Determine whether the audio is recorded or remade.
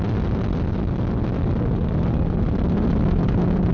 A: recorded